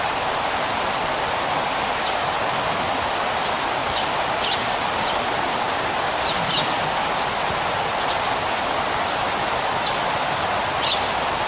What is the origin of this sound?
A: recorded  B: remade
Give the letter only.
A